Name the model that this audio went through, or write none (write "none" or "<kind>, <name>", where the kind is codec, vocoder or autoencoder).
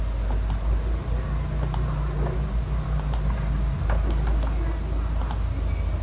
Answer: none